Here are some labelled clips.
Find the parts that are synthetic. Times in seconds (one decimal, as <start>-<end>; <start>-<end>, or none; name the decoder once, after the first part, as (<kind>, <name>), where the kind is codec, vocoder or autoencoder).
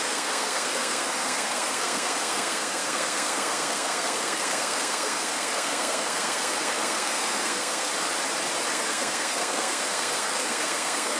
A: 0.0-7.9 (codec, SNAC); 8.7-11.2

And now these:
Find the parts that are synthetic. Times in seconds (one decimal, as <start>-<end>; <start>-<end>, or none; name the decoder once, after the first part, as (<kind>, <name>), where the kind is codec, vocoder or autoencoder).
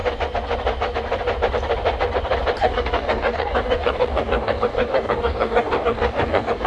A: 2.6-6.7 (codec, DAC)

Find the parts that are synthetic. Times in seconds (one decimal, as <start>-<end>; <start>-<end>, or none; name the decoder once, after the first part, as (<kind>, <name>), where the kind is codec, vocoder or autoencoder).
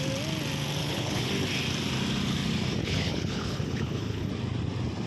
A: 0.8-1.3 (codec, HILCodec); 2.8-4.3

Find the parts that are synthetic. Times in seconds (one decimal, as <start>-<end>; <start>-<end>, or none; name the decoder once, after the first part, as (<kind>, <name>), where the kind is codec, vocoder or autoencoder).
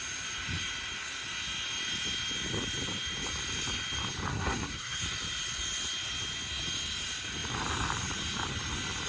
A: 4.3-5.0 (codec, SNAC)